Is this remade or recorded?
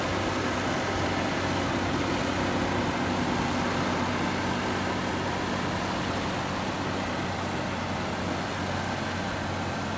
recorded